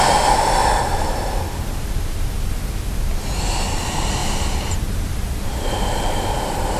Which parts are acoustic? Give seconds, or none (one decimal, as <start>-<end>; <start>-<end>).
0.0-0.6; 1.3-4.2